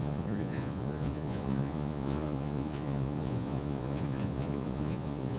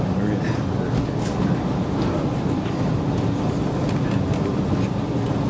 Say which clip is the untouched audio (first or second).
second